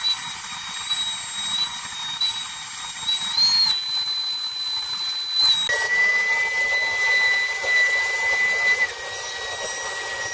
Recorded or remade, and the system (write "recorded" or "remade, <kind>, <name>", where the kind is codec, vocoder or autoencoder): recorded